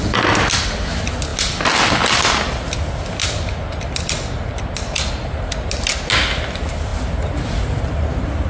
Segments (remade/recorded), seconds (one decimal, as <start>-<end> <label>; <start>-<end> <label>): 0.0-8.5 recorded